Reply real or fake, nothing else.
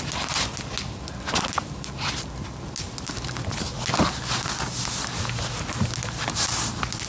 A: real